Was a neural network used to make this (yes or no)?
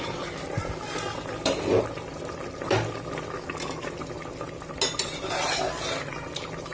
no